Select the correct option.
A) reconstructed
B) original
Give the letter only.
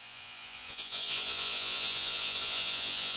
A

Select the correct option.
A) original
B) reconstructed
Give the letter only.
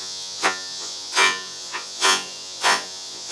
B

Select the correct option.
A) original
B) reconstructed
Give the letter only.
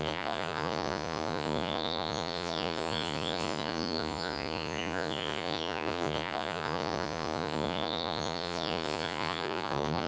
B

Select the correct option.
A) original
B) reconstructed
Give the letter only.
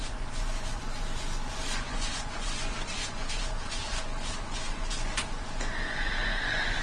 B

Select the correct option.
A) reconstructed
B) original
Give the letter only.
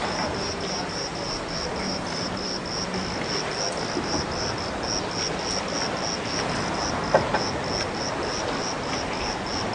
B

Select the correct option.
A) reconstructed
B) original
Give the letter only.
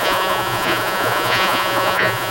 A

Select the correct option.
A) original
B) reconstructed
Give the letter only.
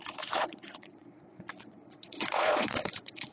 B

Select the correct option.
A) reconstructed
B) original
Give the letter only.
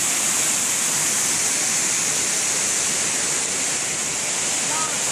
B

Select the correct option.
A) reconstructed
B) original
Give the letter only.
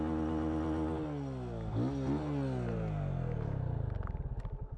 B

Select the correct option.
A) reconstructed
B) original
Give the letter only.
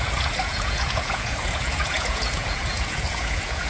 A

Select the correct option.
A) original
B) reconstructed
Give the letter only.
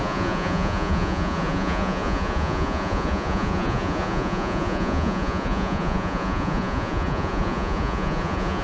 B